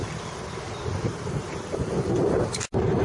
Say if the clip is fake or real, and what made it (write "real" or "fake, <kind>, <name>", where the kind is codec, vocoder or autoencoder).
real